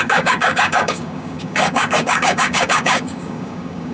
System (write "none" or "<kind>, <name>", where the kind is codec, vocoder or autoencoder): codec, DAC